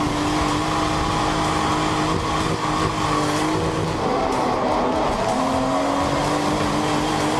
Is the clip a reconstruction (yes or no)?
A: no